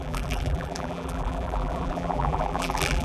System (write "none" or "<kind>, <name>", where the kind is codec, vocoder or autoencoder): vocoder, BigVGAN v2